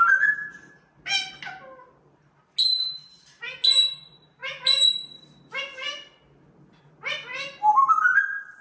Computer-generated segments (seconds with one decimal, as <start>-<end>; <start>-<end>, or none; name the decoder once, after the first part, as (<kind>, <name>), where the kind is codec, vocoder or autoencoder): 2.7-3.4 (vocoder, BigVGAN v2)